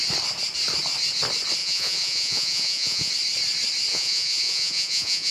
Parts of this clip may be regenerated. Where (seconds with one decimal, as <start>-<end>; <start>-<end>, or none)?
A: 1.6-3.1; 3.9-5.3